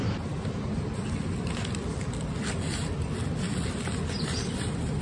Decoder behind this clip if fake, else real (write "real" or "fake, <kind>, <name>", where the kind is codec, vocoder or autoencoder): real